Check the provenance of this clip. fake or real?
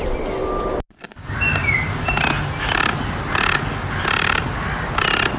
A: real